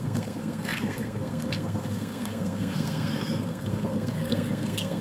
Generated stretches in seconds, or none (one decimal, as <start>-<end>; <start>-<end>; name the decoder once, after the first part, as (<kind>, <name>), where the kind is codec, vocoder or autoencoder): 0.0-5.0 (codec, SNAC)